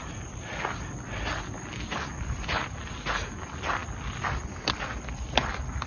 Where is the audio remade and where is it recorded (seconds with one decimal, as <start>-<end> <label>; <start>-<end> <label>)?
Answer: 0.0-5.9 recorded